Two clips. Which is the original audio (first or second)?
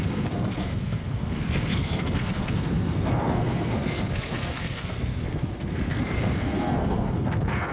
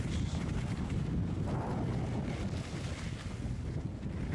second